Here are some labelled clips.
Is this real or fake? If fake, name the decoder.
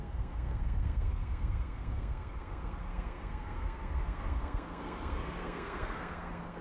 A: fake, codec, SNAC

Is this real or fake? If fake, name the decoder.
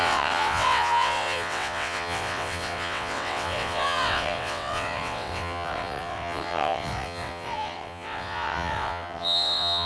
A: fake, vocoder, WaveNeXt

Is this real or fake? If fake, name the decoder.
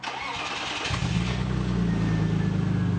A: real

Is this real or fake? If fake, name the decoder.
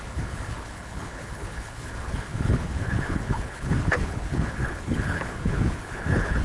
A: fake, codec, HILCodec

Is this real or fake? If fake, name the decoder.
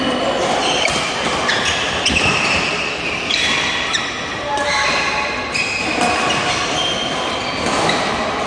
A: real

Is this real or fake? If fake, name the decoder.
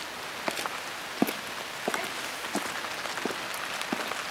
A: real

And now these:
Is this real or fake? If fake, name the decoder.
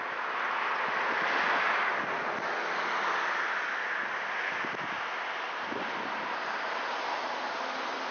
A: real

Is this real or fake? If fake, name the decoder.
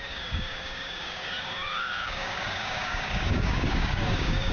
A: fake, codec, DAC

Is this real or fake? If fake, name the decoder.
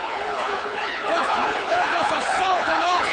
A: fake, codec, HILCodec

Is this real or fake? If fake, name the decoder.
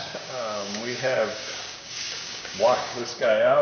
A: fake, codec, DAC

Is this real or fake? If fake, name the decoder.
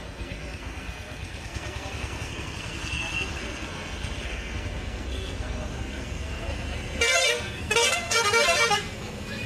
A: fake, codec, SNAC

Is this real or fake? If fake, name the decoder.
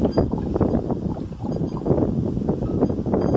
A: real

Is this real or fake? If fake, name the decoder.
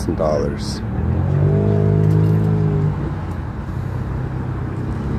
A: real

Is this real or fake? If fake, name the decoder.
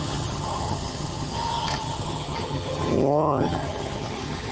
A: fake, vocoder, HiFi-GAN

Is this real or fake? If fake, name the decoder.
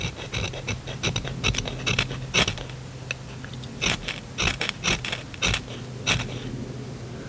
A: real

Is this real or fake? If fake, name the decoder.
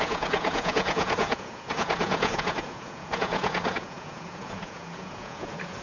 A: fake, vocoder, Vocos